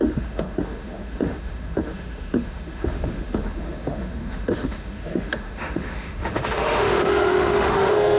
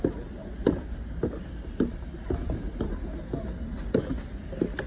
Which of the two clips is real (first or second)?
second